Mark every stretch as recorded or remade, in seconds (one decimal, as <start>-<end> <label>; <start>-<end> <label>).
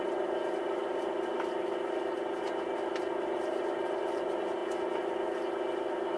0.0-6.2 recorded